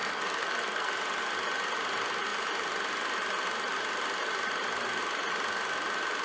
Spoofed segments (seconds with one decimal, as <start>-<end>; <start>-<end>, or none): 0.0-0.9